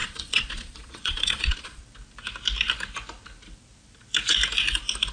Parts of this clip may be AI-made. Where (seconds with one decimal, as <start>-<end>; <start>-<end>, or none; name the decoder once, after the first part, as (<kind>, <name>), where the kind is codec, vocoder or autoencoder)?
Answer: 0.0-1.8 (vocoder, Vocos)